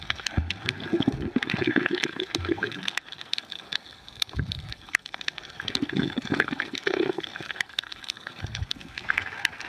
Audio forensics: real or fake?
fake